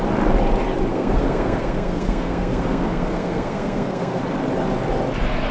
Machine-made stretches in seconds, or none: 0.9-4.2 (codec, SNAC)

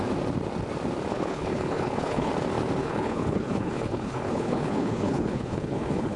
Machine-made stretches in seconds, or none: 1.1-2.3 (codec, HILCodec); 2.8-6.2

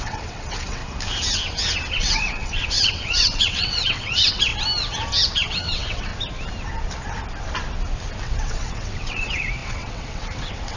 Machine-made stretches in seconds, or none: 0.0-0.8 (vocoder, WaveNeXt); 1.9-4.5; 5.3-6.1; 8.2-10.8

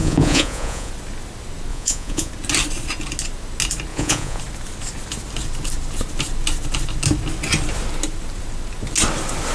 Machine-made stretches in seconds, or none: 0.0-0.9 (vocoder, Vocos); 1.7-2.3; 3.9-4.4

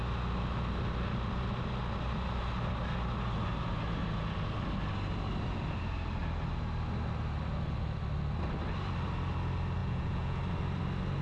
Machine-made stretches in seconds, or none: 9.8-10.4 (vocoder, Vocos)

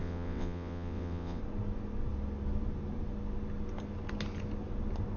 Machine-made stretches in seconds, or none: 0.0-1.4 (vocoder, WaveNeXt)

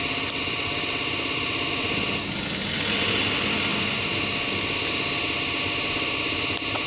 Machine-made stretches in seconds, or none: none

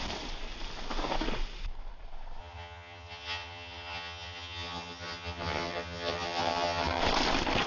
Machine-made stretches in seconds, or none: 2.4-7.0 (vocoder, HiFi-GAN)